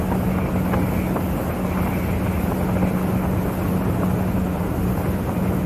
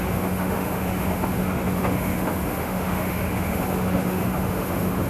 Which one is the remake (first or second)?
second